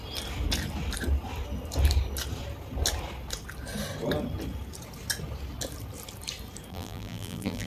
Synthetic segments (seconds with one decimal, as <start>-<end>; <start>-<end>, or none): 6.7-7.7